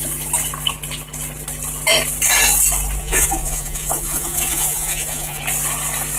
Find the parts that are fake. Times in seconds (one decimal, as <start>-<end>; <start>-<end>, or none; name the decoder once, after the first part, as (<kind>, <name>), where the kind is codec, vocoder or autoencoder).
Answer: 3.0-5.4 (vocoder, Vocos)